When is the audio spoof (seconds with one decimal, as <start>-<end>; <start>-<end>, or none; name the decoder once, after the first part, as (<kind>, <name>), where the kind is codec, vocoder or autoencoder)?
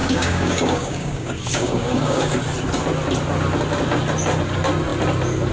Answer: 0.0-2.2 (codec, DAC)